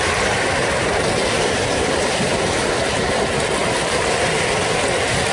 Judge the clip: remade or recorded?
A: recorded